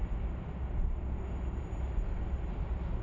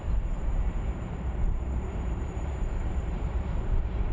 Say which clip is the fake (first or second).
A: second